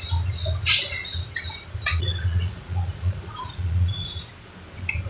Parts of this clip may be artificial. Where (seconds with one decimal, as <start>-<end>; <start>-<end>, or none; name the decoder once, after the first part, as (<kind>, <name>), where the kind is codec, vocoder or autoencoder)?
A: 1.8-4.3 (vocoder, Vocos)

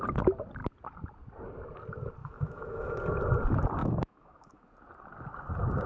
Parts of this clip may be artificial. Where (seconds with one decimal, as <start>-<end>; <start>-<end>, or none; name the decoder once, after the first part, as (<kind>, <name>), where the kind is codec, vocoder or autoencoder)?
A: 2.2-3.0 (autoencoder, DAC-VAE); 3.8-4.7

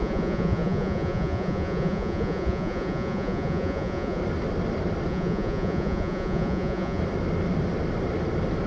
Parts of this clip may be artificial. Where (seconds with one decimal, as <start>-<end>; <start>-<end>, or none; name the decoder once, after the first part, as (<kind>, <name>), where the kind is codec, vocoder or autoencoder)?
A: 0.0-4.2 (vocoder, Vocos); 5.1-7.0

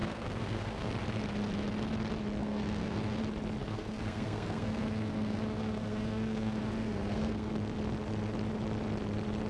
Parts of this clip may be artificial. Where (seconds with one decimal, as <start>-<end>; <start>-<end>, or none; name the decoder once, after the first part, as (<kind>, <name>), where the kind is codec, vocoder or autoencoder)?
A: 0.0-0.9 (codec, SNAC); 2.4-3.2; 3.6-7.5